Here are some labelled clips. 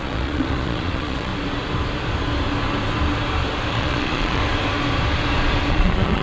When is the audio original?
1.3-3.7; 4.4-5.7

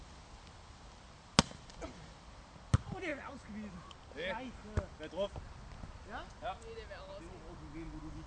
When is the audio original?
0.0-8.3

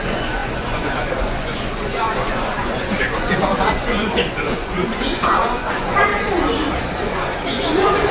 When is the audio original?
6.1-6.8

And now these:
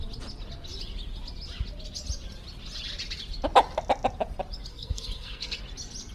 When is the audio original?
0.0-4.7; 5.6-6.1

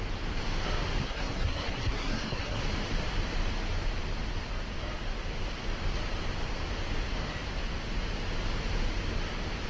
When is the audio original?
0.0-1.0; 2.6-9.7

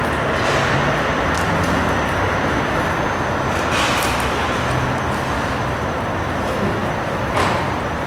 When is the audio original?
0.0-6.8

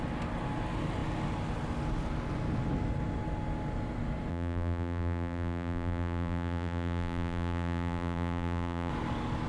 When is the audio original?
0.0-4.3; 8.9-9.5

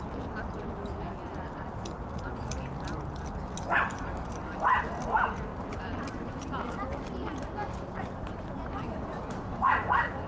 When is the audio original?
0.0-1.3; 2.0-5.5; 6.5-10.3